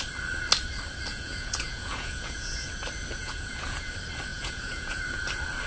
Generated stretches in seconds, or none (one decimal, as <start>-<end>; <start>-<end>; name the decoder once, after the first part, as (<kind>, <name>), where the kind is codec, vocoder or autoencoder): 1.1-2.7 (vocoder, Vocos); 3.2-3.9; 4.3-5.0